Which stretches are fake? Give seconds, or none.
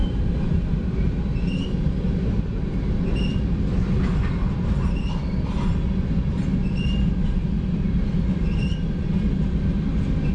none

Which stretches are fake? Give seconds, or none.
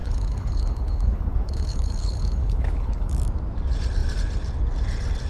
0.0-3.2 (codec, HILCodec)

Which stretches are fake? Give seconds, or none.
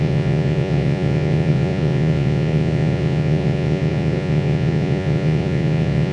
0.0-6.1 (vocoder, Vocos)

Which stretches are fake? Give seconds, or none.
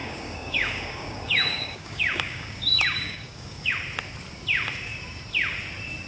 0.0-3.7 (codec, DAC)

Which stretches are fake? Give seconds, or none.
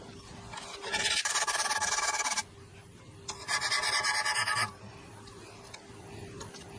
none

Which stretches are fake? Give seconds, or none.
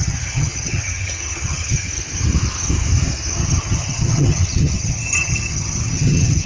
0.0-1.9 (vocoder, HiFi-GAN); 3.4-6.5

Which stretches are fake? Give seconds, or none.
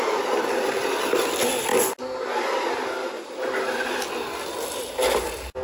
none